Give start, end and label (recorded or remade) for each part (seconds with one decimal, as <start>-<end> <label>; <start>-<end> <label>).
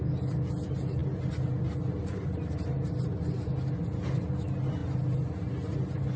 0.0-6.2 recorded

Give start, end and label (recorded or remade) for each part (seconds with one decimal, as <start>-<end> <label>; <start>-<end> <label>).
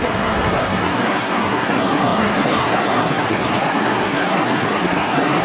0.0-5.4 remade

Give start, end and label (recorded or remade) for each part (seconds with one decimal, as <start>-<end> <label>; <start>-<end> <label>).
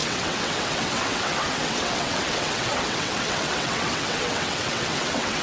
0.0-5.4 remade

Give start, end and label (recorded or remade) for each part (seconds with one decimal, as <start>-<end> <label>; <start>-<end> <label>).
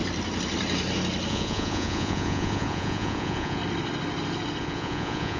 0.0-1.3 recorded; 1.3-3.6 remade; 3.6-4.6 recorded; 4.6-5.4 remade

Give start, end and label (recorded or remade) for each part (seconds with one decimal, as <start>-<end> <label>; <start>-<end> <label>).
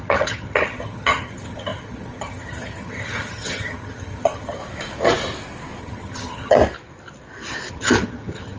0.0-4.6 remade; 4.6-5.8 recorded; 5.8-6.6 remade; 6.6-7.7 recorded; 7.7-8.6 remade